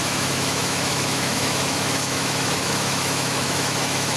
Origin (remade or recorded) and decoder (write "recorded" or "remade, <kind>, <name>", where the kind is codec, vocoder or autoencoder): remade, autoencoder, DAC-VAE